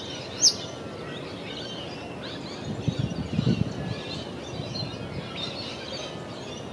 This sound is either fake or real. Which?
real